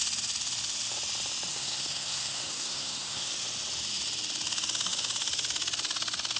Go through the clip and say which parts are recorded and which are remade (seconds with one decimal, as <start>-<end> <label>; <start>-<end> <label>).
0.0-1.5 recorded; 1.5-3.3 remade; 3.3-6.4 recorded